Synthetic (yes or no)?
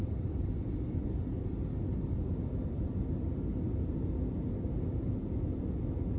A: no